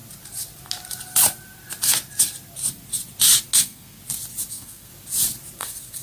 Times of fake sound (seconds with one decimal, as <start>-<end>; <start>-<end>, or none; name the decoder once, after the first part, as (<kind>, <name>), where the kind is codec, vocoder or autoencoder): 3.6-4.0 (codec, SNAC); 4.5-4.9; 5.6-6.0